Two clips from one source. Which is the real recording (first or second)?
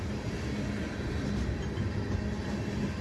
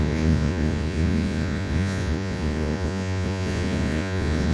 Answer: first